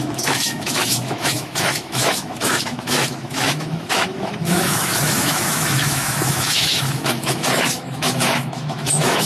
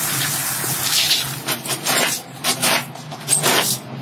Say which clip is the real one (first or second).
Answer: second